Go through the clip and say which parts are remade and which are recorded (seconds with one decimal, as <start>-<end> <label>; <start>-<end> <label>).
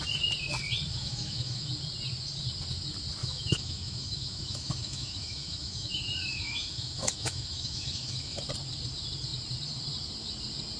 0.0-0.9 recorded; 0.9-1.7 remade; 1.7-3.2 recorded; 3.2-8.4 remade; 8.4-10.8 recorded